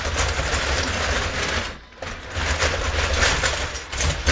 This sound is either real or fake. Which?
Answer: real